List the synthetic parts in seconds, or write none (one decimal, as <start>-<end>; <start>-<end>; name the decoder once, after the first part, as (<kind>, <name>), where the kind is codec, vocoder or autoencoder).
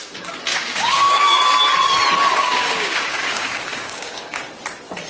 0.5-1.4 (codec, DAC); 2.4-4.4